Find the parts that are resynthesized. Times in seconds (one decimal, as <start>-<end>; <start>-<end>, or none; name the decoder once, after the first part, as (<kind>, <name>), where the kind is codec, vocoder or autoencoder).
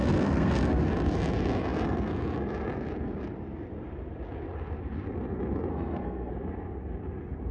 0.0-0.8 (codec, SNAC); 5.7-6.3